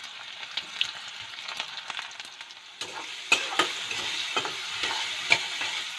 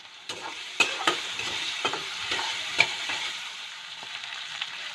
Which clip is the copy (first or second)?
second